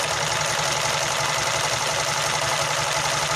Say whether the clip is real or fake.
real